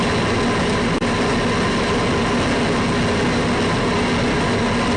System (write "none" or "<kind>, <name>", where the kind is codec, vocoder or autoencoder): none